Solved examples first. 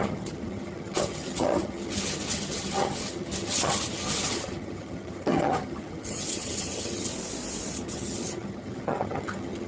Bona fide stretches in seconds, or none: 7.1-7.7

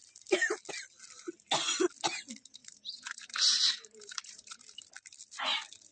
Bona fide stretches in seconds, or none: 0.0-2.6; 4.9-5.9

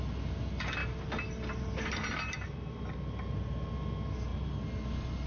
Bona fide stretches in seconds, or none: 0.0-5.3

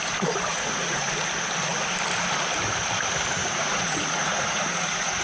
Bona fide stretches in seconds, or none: 0.0-0.5; 1.1-3.4

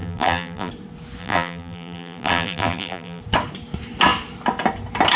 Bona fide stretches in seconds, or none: 0.7-1.2; 3.2-5.2